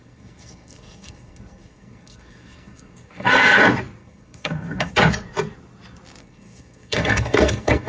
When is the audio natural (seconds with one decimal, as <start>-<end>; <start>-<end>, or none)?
3.6-4.0; 4.9-6.2